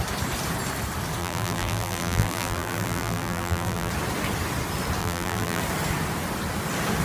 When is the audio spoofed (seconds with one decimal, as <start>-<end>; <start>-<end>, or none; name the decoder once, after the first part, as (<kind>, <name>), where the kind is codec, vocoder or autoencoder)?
1.2-3.9 (vocoder, BigVGAN v2); 5.0-5.6